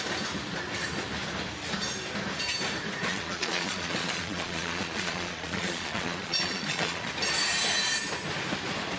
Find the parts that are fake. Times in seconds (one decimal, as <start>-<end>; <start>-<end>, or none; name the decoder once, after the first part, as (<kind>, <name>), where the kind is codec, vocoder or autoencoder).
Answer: 3.1-7.1 (vocoder, Vocos)